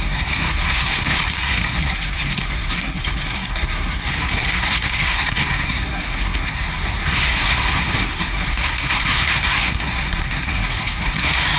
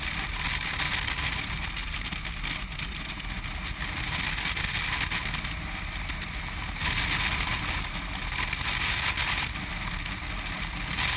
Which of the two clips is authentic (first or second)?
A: second